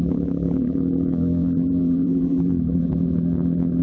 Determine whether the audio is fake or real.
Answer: fake